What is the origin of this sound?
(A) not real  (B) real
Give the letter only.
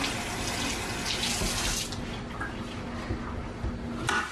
B